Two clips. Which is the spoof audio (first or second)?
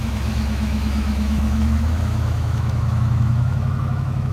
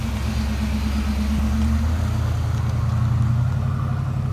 first